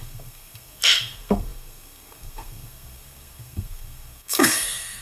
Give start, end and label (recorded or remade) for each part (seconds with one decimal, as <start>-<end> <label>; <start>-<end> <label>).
0.0-5.0 remade